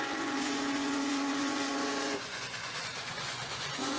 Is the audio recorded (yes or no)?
no